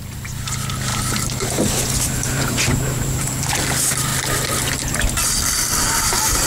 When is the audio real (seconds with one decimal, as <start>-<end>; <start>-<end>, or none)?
0.0-0.9; 3.3-6.5